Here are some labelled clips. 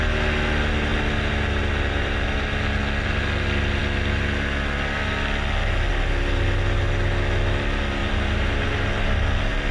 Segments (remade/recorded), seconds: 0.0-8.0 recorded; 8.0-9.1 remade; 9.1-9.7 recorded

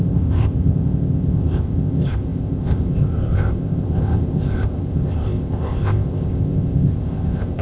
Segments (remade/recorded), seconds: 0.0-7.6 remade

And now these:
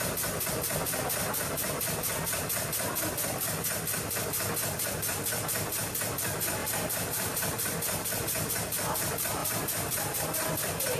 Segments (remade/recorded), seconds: 0.0-6.6 recorded; 6.6-8.5 remade; 8.5-9.4 recorded; 9.4-10.2 remade; 10.2-11.0 recorded